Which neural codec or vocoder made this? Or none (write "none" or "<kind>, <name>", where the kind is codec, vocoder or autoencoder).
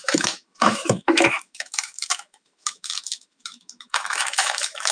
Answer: autoencoder, DAC-VAE